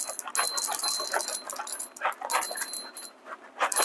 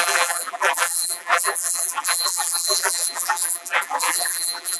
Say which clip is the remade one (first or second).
second